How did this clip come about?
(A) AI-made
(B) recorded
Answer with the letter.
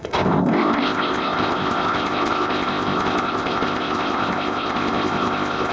A